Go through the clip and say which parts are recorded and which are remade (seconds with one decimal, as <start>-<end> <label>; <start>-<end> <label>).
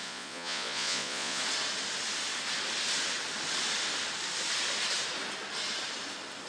0.0-1.4 remade; 1.4-6.5 recorded